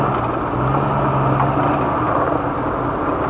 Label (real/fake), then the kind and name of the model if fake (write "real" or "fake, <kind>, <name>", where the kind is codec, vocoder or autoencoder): real